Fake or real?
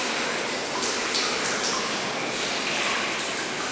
real